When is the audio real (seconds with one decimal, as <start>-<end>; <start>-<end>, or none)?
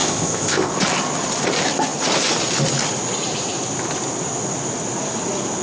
0.7-5.6